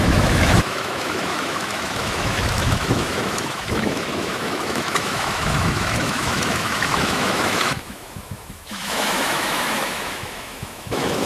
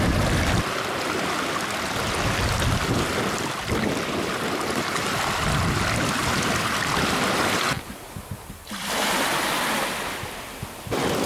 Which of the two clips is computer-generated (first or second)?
first